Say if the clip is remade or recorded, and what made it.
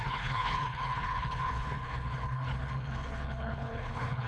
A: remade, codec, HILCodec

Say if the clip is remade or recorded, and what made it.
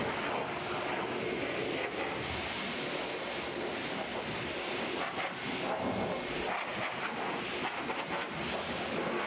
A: recorded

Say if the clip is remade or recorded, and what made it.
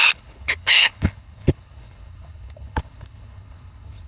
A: remade, codec, HILCodec